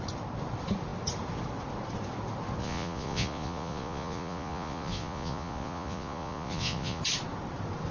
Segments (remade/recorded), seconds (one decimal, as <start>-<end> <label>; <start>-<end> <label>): 0.0-2.6 recorded; 2.6-7.0 remade; 7.0-7.9 recorded